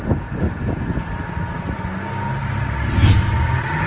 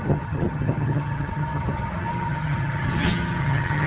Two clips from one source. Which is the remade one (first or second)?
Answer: second